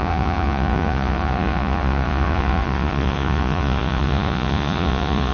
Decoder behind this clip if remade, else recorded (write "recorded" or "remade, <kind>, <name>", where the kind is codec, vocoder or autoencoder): remade, vocoder, Vocos